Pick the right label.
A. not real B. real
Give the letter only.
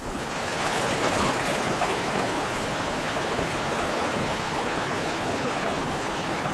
A